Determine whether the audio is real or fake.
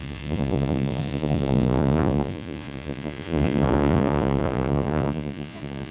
fake